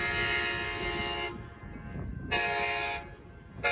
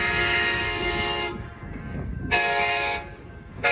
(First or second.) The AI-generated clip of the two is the second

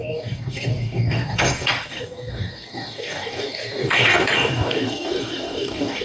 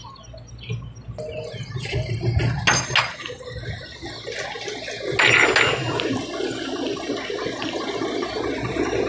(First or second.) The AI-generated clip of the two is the first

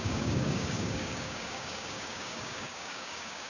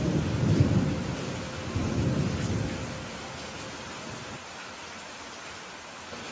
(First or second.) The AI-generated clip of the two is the first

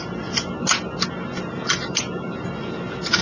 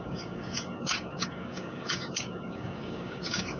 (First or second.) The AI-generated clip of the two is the second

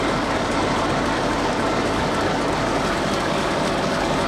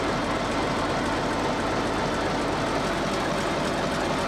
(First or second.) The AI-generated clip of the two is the first